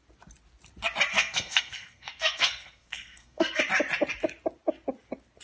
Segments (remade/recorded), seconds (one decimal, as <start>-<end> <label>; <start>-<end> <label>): 0.0-1.1 recorded; 1.1-3.6 remade; 3.6-5.4 recorded